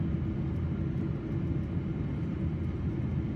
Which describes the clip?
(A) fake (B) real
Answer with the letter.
B